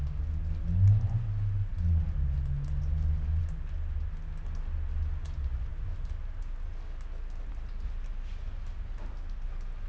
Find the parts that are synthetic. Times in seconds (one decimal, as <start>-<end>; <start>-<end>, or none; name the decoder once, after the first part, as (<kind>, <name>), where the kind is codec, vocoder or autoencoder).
none